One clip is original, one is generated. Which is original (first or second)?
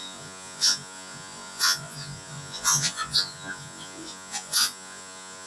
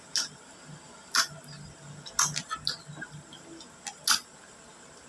second